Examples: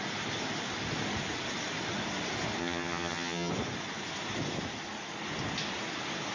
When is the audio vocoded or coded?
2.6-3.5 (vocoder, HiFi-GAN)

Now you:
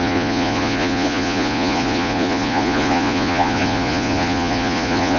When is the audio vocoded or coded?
0.0-5.2 (vocoder, Vocos)

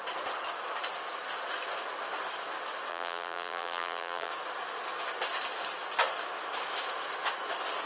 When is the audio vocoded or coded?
2.9-4.3 (vocoder, BigVGAN v2)

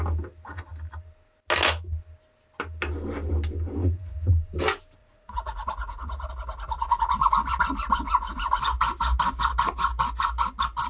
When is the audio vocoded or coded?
3.8-4.3 (vocoder, Vocos); 5.0-6.3

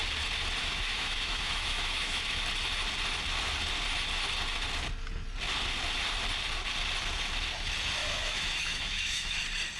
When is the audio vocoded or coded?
0.6-2.4 (autoencoder, DAC-VAE); 8.0-9.4